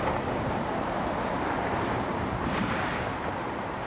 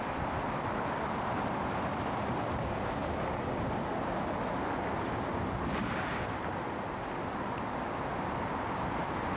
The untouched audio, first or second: second